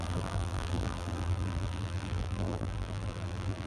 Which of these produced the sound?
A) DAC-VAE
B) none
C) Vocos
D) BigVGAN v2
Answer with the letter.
D